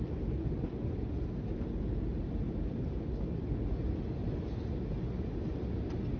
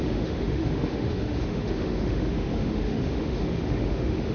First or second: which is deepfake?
second